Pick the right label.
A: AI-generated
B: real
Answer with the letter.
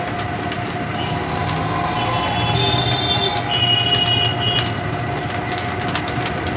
B